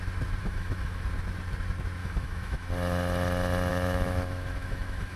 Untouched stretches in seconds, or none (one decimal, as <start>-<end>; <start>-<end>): 0.0-0.4; 1.0-2.0; 2.7-3.7